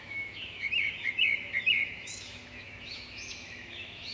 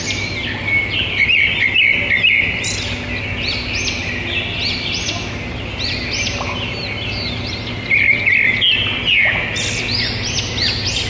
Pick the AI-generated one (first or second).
first